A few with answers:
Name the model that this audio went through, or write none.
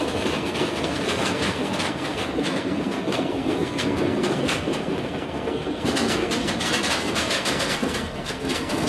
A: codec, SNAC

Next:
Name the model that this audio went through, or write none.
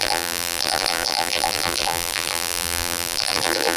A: vocoder, BigVGAN v2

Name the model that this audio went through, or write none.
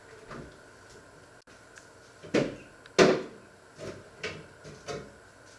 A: none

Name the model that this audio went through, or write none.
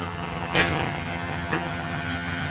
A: vocoder, HiFi-GAN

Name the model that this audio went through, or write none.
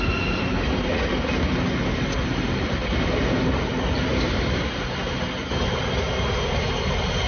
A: none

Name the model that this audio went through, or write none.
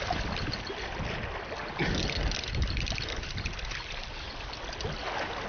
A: none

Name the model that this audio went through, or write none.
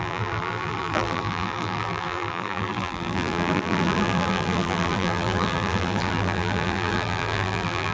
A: vocoder, BigVGAN v2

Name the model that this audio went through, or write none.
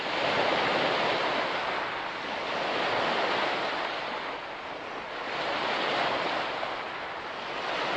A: none